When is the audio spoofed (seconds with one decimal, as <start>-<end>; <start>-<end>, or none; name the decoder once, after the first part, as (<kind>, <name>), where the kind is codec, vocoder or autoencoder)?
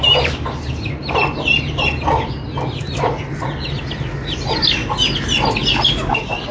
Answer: none